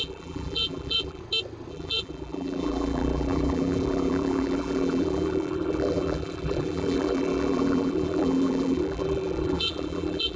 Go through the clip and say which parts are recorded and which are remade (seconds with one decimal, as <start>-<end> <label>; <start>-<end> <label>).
0.0-1.2 remade; 1.2-1.7 recorded; 1.7-10.4 remade